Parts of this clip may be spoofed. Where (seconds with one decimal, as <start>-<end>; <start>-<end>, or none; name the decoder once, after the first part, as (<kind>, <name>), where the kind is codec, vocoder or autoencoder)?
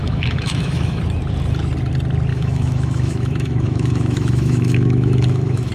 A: 0.0-1.0 (autoencoder, DAC-VAE); 2.3-5.7